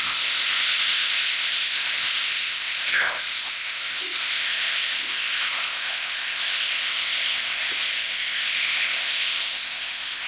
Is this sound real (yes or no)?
no